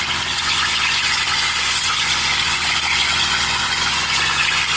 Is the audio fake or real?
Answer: fake